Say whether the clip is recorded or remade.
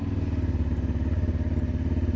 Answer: recorded